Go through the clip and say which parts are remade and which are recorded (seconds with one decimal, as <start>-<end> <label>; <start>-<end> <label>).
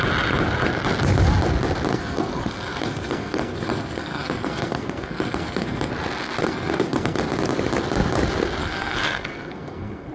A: 0.0-1.9 recorded; 1.9-5.9 remade; 5.9-6.4 recorded; 6.4-7.2 remade; 7.2-8.6 recorded; 8.6-10.1 remade